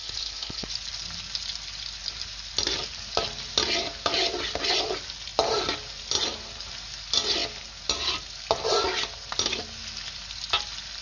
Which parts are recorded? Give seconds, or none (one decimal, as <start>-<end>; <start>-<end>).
0.7-11.0